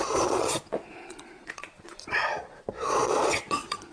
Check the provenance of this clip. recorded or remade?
remade